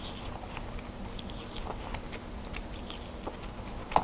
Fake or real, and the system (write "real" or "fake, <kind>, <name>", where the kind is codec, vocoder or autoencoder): real